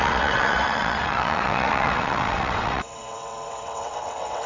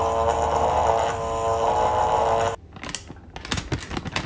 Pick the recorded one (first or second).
second